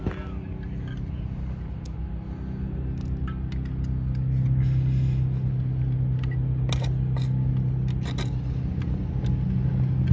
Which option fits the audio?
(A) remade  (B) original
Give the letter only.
B